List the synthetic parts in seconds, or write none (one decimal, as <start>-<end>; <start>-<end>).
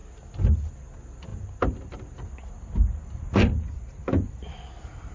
none